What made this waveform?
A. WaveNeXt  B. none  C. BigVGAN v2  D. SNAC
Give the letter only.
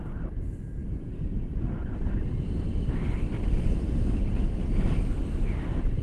B